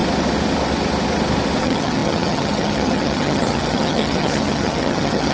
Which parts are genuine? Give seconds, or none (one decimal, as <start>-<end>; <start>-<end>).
0.0-1.6